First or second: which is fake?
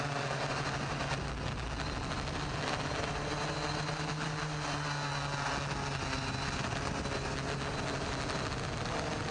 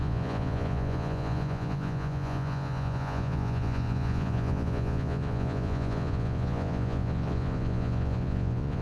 second